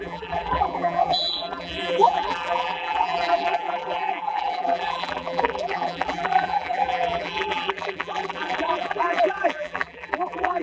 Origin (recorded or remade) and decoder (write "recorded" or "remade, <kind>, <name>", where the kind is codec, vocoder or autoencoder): remade, vocoder, BigVGAN v2